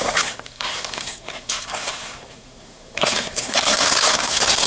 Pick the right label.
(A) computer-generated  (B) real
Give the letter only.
A